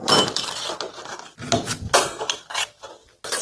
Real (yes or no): yes